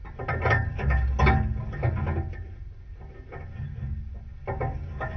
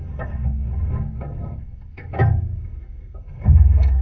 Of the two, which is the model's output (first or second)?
second